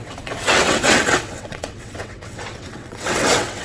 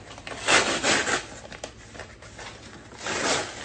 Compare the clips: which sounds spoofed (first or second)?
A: first